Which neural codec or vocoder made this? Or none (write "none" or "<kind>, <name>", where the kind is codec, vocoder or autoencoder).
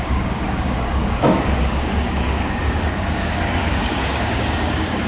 codec, DAC